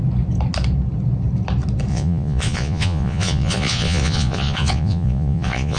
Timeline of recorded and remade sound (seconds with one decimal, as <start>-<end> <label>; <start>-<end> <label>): 0.0-1.9 recorded; 1.9-5.8 remade